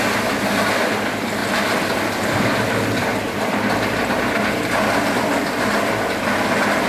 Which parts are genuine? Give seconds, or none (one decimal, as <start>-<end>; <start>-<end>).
0.0-1.4; 3.7-6.9